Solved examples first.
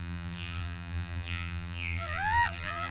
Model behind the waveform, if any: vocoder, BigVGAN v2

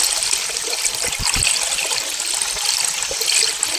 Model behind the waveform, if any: none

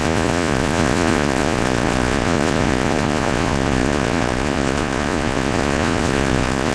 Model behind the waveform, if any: vocoder, Vocos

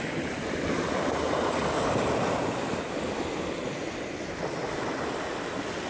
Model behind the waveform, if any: none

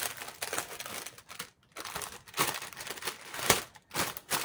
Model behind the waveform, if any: none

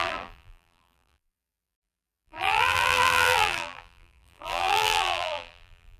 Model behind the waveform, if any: vocoder, BigVGAN v2